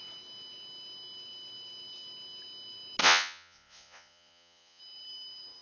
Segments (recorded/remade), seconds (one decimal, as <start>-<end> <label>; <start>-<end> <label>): 0.0-3.0 recorded; 3.0-4.8 remade; 4.8-5.6 recorded